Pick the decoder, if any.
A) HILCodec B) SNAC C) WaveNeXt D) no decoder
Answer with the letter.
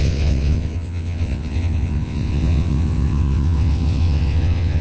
C